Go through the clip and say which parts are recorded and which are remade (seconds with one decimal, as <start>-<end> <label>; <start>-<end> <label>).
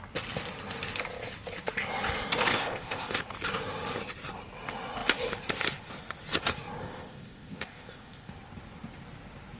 0.0-2.5 recorded; 2.5-3.2 remade; 3.2-6.8 recorded; 6.8-8.3 remade; 8.3-9.6 recorded